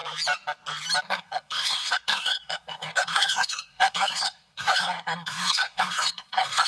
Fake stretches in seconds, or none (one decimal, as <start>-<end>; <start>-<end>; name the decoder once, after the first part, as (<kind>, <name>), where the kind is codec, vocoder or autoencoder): 1.0-6.7 (codec, SNAC)

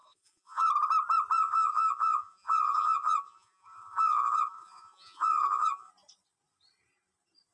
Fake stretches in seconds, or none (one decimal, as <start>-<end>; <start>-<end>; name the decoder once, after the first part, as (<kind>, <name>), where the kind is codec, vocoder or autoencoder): 0.0-0.7 (vocoder, Vocos); 1.4-5.9

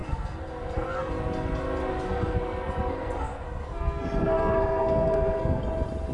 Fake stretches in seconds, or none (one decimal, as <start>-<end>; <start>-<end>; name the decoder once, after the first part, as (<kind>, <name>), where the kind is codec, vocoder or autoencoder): 0.0-1.1 (codec, SNAC); 1.9-5.6

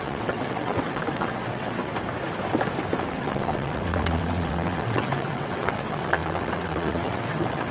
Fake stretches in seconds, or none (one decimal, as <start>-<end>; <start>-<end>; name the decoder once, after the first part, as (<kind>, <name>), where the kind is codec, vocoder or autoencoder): 0.0-1.9 (vocoder, WaveNeXt); 3.0-7.7

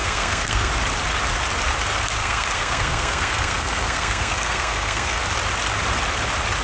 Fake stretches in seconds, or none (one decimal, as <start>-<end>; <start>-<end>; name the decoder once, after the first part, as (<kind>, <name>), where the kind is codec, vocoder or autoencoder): 0.0-0.7 (codec, SNAC); 2.2-5.2

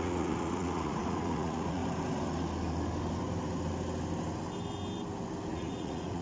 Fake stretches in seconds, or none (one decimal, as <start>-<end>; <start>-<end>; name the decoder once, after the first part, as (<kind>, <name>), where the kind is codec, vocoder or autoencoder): 0.0-1.8 (vocoder, Vocos); 5.5-6.2

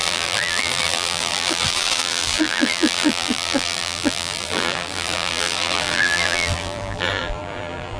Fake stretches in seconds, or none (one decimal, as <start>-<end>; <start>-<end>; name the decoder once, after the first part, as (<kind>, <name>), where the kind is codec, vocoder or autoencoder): 0.0-8.0 (vocoder, BigVGAN v2)

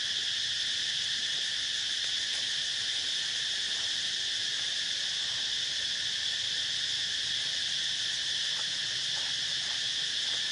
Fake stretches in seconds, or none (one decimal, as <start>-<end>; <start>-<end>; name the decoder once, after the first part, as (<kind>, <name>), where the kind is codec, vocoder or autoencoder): none